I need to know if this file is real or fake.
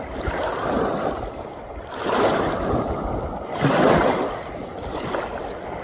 real